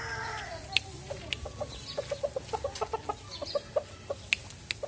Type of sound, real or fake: real